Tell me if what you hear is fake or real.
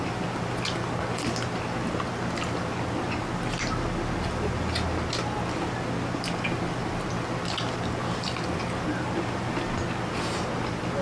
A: real